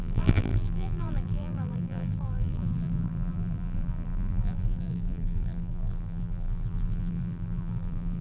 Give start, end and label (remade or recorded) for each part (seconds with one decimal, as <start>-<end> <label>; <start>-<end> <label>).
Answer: 0.0-8.2 remade